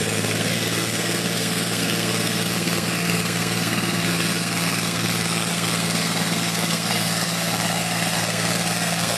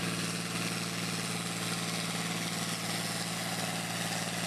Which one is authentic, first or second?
second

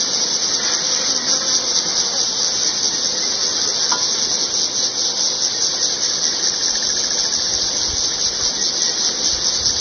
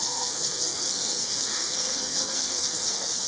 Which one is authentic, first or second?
first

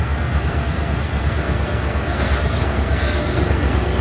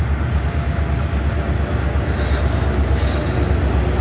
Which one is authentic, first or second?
second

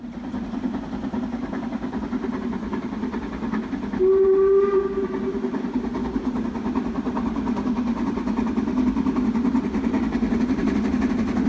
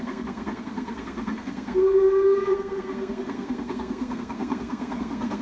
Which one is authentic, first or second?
first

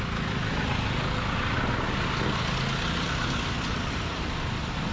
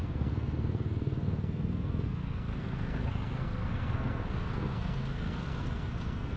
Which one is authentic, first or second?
first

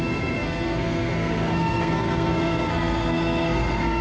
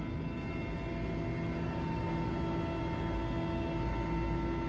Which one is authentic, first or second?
second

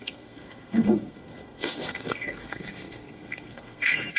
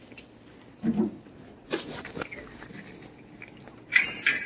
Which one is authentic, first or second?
second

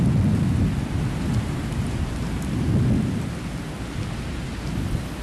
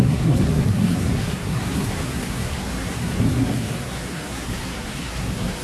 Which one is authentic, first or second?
first